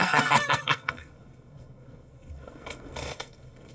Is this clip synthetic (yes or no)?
yes